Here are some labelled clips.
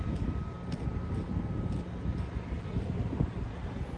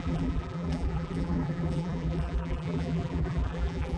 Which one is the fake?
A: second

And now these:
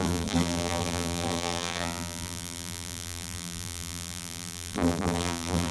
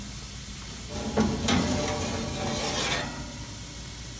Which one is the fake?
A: first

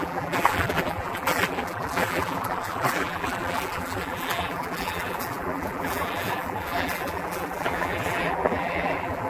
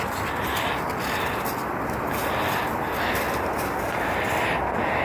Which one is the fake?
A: first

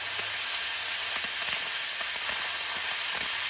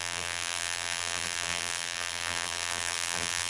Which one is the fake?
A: second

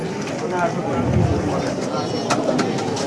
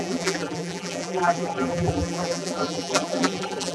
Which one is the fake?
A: second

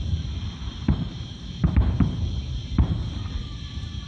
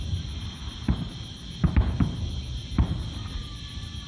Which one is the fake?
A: first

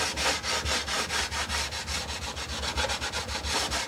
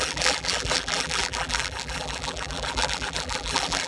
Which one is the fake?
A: second